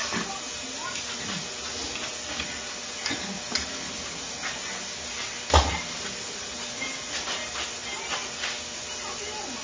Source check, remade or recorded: recorded